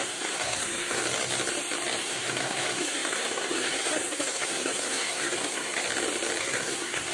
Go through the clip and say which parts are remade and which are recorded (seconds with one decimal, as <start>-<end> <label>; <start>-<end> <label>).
0.0-1.0 remade; 1.0-2.0 recorded; 2.0-5.7 remade; 5.7-6.4 recorded; 6.4-7.1 remade